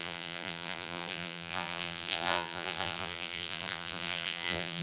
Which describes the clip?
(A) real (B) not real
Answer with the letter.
B